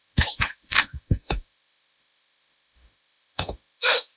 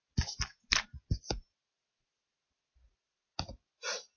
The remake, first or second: first